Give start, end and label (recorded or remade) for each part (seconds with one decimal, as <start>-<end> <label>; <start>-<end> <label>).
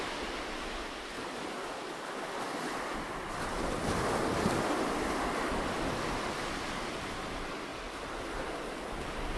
0.0-7.7 recorded; 7.7-9.4 remade